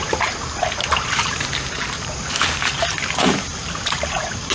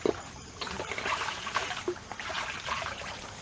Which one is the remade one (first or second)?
first